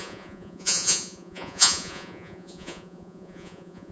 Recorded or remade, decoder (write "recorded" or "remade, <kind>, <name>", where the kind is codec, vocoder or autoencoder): remade, vocoder, Vocos